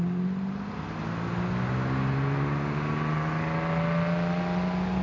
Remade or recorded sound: recorded